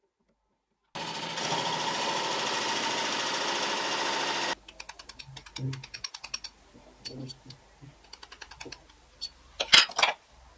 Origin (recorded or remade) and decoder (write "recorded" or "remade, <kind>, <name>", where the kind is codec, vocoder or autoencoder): recorded